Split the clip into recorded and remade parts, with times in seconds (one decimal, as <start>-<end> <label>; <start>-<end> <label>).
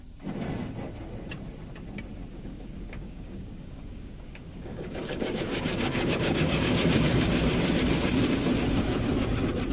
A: 0.0-2.3 recorded; 2.3-7.3 remade; 7.3-9.7 recorded